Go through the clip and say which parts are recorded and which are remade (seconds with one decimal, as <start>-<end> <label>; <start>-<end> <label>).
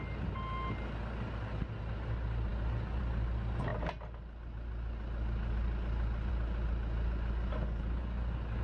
0.0-8.6 recorded